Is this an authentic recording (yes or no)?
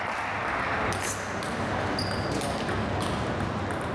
yes